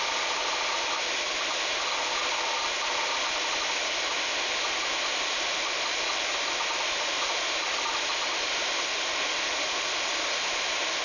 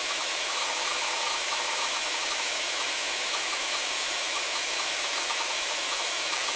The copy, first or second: second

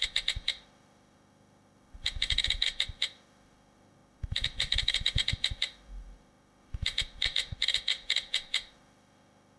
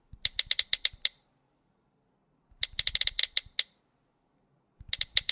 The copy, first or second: first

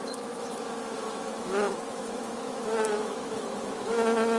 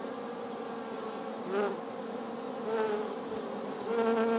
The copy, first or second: first